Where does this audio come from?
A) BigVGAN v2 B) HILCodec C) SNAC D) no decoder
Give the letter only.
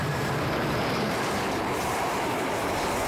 A